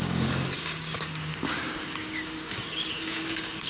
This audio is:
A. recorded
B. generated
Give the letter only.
B